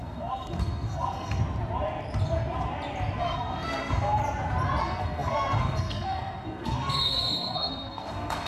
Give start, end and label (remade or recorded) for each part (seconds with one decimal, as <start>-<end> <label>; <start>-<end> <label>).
0.0-1.4 remade; 1.4-3.2 recorded; 3.2-4.2 remade; 4.2-4.8 recorded; 4.8-8.5 remade